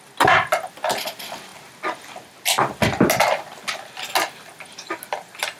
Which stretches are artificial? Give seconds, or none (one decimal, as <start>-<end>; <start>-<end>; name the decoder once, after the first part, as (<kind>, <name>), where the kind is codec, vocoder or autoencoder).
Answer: none